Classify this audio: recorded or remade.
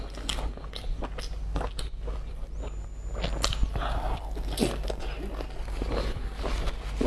recorded